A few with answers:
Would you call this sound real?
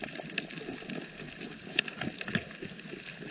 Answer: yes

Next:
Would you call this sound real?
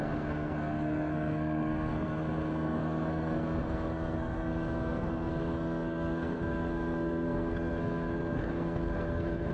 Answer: no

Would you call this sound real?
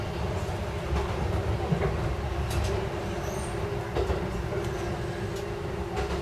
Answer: yes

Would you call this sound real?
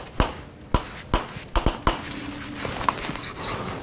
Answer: yes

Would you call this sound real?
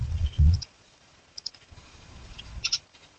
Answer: no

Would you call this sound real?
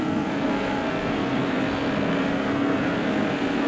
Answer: no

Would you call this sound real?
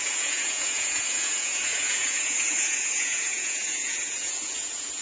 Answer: no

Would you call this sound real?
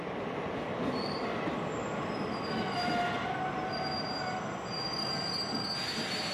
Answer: yes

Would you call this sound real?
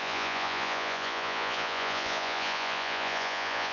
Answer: no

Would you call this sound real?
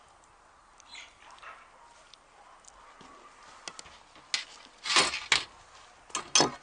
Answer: yes